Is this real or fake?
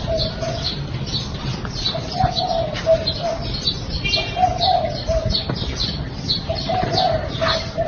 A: real